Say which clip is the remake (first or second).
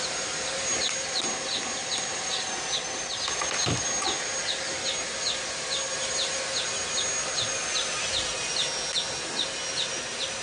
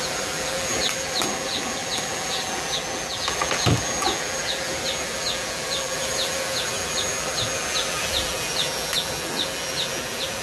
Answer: second